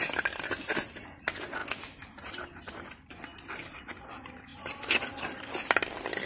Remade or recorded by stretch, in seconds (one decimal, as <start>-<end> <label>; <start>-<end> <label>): 0.0-6.3 recorded